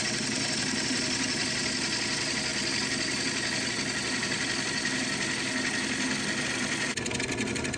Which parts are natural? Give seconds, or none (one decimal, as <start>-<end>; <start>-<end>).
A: 0.0-7.8